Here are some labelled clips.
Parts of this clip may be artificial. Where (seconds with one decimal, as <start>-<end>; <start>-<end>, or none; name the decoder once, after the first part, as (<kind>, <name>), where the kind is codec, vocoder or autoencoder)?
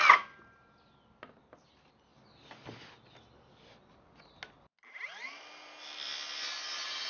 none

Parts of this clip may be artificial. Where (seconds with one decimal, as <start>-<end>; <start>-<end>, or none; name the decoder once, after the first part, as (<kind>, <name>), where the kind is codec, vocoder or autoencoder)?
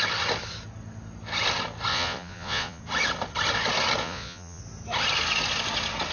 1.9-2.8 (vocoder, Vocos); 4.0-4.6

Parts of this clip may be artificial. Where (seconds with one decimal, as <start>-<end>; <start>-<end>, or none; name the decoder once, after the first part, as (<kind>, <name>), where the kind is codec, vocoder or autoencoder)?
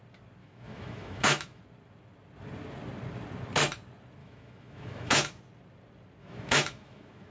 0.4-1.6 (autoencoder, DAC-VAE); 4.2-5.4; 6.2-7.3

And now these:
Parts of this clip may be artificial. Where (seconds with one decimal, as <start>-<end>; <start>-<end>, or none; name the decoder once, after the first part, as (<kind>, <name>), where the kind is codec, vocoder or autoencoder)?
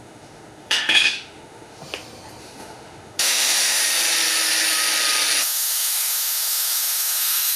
0.0-1.8 (autoencoder, DAC-VAE); 2.4-3.8; 5.4-7.6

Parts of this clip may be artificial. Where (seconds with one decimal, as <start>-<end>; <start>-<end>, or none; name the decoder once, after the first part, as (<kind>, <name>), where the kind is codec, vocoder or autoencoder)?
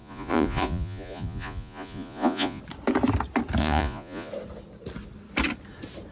0.0-2.6 (vocoder, Vocos); 3.6-4.3